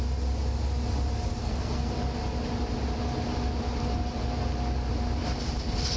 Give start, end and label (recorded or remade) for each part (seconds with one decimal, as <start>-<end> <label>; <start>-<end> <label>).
0.0-1.4 recorded; 1.4-1.9 remade; 1.9-6.0 recorded